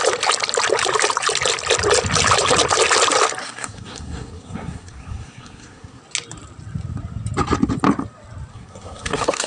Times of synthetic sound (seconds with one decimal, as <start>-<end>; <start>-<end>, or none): 3.4-6.0; 8.5-9.5